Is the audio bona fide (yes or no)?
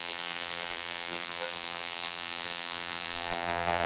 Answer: no